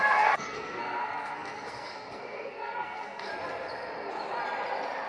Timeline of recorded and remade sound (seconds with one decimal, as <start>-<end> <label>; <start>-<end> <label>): 0.0-3.3 remade; 3.3-5.1 recorded